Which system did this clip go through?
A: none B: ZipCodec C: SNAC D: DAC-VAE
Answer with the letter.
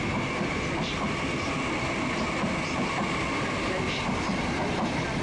A